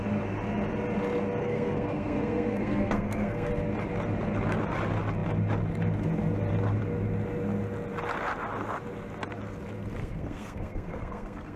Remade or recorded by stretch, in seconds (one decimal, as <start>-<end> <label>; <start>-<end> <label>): 0.0-1.4 recorded; 1.4-3.5 remade; 3.5-10.0 recorded; 10.0-11.6 remade